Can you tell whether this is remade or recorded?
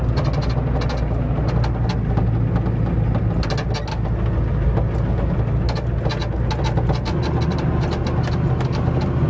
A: recorded